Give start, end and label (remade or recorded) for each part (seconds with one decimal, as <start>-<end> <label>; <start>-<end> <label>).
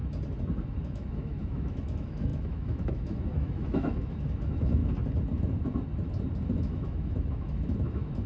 0.0-0.8 recorded; 0.8-4.8 remade; 4.8-6.5 recorded; 6.5-8.3 remade